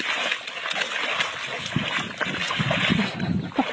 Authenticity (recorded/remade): recorded